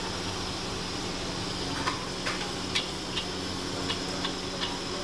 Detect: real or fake real